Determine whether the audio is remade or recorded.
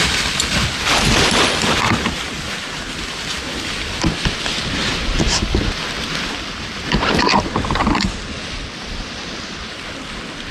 recorded